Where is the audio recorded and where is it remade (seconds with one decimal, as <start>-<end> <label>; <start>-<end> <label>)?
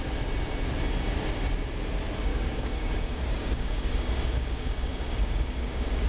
0.0-2.3 recorded; 2.3-6.1 remade